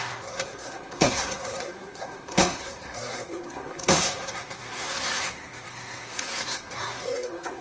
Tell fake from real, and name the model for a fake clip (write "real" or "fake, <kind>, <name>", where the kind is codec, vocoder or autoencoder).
fake, codec, SNAC